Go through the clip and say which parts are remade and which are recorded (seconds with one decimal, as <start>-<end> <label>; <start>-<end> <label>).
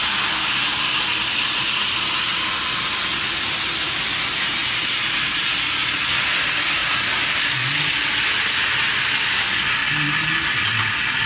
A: 0.0-11.3 recorded